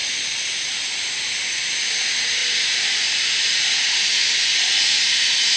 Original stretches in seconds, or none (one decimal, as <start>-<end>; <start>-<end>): 0.0-5.6